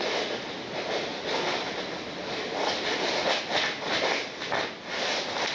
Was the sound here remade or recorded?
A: recorded